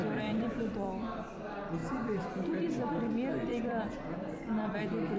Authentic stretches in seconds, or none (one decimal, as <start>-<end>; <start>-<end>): 1.3-1.8; 3.1-3.5; 4.8-5.2